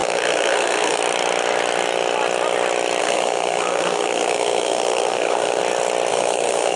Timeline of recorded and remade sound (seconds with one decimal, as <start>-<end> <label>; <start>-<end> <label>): 0.0-1.0 remade; 1.0-3.0 recorded; 3.0-5.6 remade; 5.6-6.1 recorded; 6.1-6.8 remade